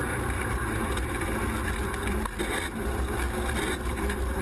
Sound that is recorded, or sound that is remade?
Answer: recorded